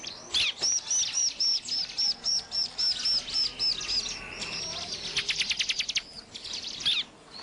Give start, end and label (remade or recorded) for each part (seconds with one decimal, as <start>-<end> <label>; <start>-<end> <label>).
0.0-7.4 recorded